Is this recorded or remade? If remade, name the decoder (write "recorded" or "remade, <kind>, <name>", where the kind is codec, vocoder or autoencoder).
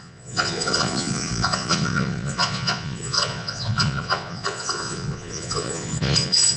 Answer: remade, vocoder, Vocos